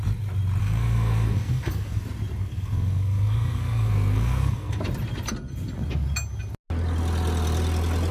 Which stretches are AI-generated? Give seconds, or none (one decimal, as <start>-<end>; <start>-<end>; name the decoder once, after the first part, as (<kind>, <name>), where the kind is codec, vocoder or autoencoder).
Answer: 0.6-2.0 (codec, SNAC); 2.4-4.8